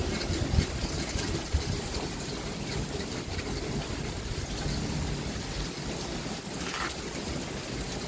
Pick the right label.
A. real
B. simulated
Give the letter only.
A